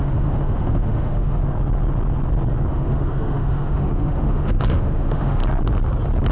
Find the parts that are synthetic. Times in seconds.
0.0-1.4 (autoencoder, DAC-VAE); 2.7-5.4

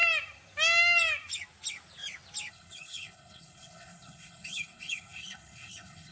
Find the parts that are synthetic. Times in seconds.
2.5-6.1 (codec, HILCodec)